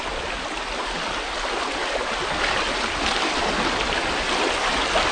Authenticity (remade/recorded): recorded